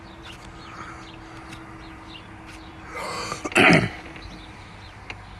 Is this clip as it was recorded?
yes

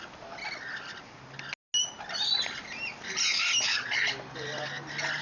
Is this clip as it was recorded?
yes